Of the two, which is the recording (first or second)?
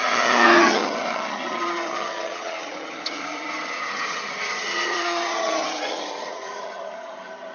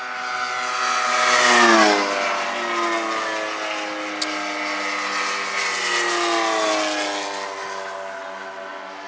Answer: second